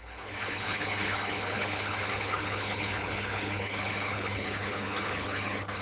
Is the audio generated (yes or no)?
yes